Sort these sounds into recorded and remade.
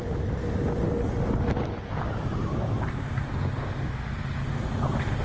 recorded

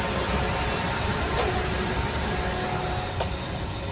recorded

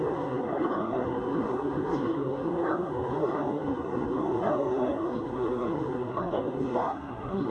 remade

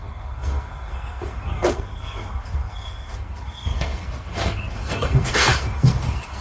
remade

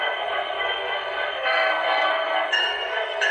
remade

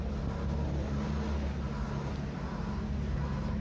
recorded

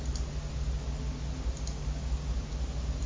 recorded